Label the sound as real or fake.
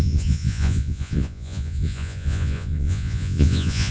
fake